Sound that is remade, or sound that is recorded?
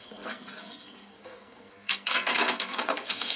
remade